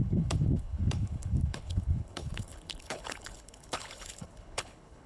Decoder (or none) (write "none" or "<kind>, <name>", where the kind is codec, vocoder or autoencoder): codec, HILCodec